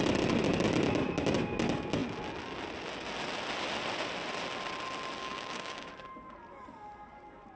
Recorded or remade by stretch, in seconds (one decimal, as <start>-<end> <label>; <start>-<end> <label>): 0.0-5.2 recorded; 5.2-5.9 remade; 5.9-7.6 recorded